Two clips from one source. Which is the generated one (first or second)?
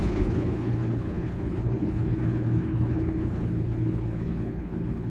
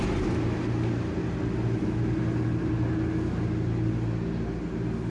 first